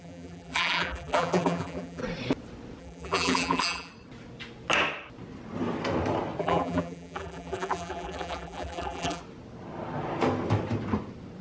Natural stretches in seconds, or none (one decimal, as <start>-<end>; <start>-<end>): 2.0-2.8; 3.9-6.4; 9.2-11.4